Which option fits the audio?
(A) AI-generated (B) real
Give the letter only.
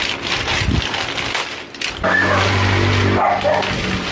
B